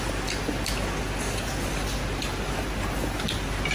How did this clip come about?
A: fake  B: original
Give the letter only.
B